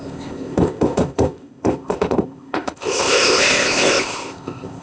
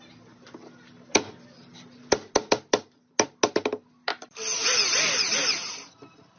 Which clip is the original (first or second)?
second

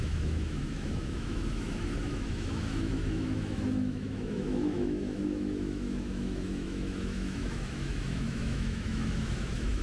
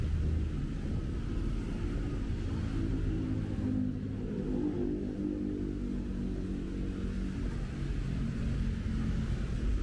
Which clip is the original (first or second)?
second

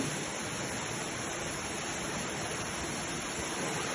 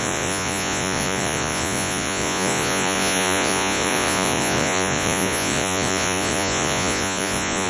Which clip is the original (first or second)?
first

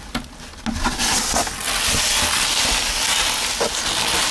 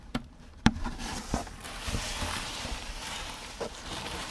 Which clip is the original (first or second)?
first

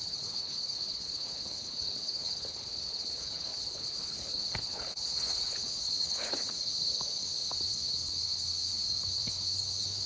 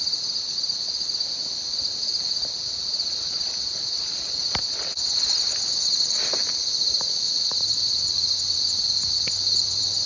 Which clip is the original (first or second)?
second